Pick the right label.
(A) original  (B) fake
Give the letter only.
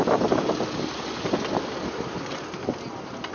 A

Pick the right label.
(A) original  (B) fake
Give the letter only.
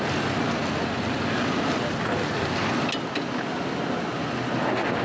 A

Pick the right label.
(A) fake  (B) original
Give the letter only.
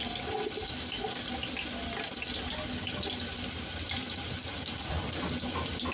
B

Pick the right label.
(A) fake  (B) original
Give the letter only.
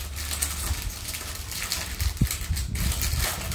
B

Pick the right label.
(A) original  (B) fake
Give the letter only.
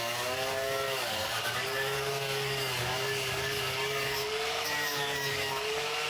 B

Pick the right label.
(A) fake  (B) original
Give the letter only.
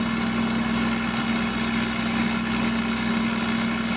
B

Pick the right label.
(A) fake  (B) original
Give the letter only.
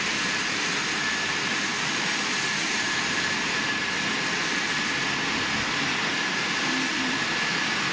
A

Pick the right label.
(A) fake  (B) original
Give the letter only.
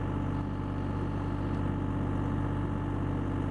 B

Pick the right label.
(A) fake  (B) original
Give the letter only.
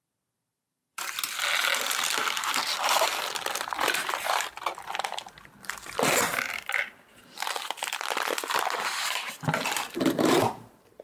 B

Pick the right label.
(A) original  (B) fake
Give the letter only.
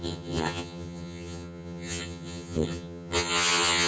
B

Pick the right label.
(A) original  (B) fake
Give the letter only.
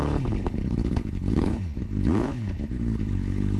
B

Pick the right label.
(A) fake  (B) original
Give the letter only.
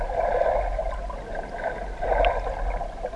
B